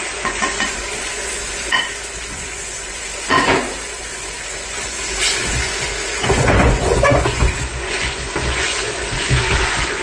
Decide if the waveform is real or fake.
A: fake